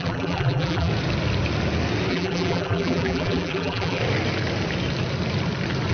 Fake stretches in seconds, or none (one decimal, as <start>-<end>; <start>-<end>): 0.0-0.9; 2.1-4.0